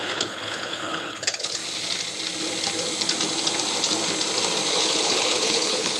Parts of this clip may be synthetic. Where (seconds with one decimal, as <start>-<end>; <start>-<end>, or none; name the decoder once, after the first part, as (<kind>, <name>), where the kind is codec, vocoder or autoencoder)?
0.0-1.6 (codec, HILCodec); 4.7-6.0